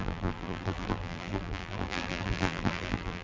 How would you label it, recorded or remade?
remade